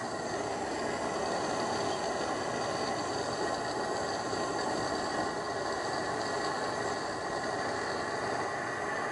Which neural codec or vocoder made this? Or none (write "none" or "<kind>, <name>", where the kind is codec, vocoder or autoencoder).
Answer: none